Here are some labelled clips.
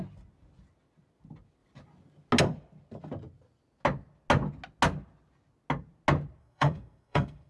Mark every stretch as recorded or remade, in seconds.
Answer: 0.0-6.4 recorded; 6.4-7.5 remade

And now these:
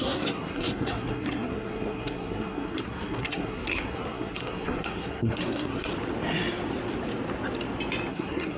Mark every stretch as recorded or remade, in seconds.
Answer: 0.0-5.9 remade; 5.9-8.1 recorded; 8.1-8.6 remade

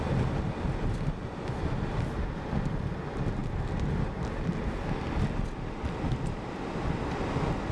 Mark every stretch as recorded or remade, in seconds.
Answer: 0.0-7.7 recorded

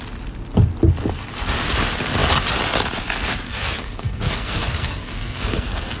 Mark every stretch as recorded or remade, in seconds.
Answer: 0.0-3.5 recorded; 3.5-6.0 remade

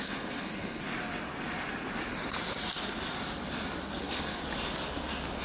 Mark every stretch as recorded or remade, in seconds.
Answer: 0.0-0.8 remade; 0.8-4.0 recorded; 4.0-4.4 remade; 4.4-5.4 recorded

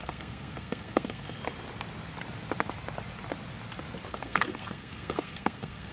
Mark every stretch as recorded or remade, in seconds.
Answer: 0.0-1.4 remade; 1.4-4.1 recorded; 4.1-5.9 remade